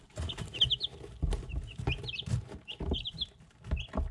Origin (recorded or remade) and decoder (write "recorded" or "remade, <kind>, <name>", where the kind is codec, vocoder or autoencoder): recorded